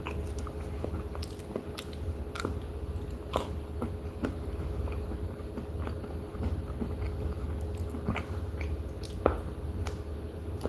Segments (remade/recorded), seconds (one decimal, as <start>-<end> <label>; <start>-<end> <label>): 0.0-10.7 recorded